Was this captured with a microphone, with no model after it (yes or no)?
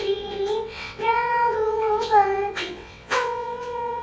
no